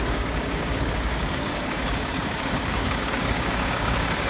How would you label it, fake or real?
fake